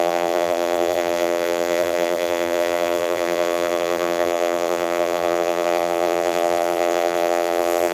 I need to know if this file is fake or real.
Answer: fake